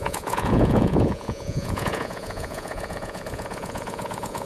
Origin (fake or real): fake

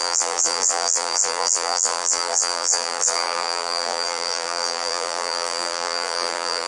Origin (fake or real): fake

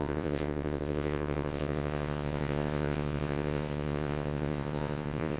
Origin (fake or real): fake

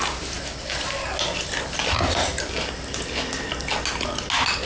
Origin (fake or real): real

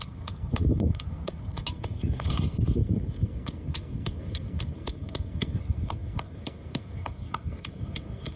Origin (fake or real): fake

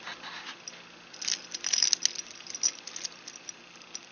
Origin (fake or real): real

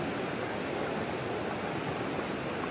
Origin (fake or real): real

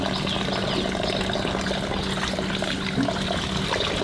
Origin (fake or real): real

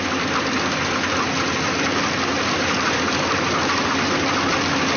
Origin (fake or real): real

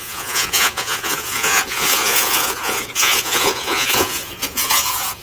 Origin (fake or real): fake